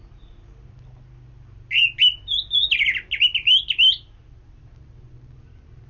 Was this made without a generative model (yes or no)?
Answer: yes